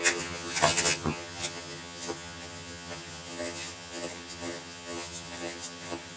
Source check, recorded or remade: remade